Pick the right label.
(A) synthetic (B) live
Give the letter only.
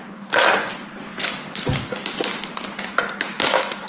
B